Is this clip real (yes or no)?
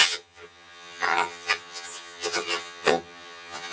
no